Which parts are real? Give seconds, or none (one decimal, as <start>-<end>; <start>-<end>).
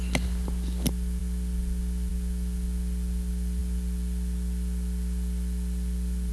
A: 0.0-6.3